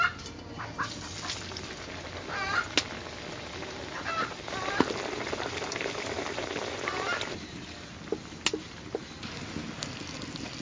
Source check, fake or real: real